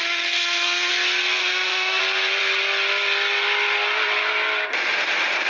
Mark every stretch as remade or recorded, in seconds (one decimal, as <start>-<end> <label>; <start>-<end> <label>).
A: 0.0-0.4 recorded; 0.4-0.9 remade; 0.9-1.4 recorded; 1.4-2.0 remade; 2.0-5.5 recorded